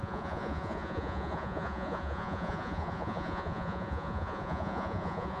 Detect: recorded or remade remade